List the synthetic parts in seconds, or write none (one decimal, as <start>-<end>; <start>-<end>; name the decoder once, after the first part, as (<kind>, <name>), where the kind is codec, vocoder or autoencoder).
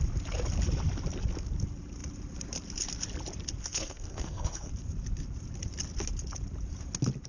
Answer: 3.6-4.7 (codec, SNAC)